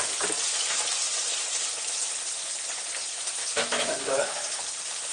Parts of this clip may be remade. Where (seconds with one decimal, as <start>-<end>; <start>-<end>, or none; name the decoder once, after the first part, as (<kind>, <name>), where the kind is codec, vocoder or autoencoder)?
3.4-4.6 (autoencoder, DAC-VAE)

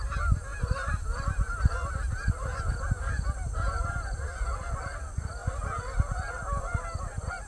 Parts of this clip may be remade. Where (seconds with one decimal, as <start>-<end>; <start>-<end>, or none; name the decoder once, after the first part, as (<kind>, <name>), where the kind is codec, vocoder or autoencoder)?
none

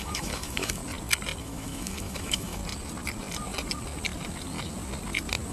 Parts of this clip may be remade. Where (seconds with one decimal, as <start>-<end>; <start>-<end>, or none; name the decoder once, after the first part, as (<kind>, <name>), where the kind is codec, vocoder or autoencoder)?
0.0-0.8 (autoencoder, DAC-VAE); 1.4-2.6